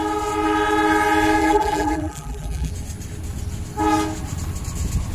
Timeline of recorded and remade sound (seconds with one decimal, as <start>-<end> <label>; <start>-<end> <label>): 0.0-1.4 recorded; 1.4-2.7 remade; 2.7-5.1 recorded